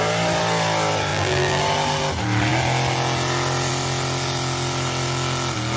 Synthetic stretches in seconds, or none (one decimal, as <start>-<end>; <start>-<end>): 1.1-1.6